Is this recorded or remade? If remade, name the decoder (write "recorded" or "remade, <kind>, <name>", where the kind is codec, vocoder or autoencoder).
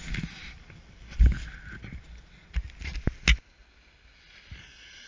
recorded